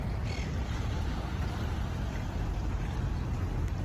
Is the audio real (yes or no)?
yes